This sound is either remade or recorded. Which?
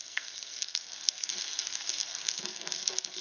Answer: remade